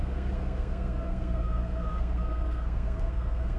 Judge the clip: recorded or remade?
remade